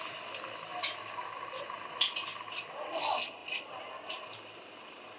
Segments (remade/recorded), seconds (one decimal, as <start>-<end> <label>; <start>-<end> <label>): 0.0-5.2 recorded